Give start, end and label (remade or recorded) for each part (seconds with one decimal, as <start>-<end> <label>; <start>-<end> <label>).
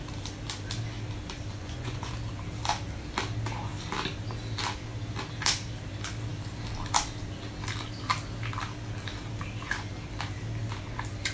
0.0-1.6 recorded; 1.6-2.1 remade; 2.1-11.3 recorded